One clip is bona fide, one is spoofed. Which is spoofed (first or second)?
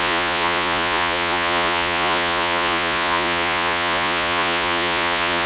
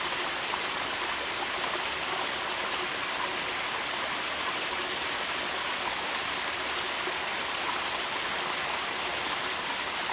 first